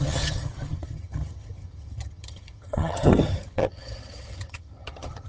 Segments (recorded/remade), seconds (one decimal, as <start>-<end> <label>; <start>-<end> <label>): 0.0-5.3 remade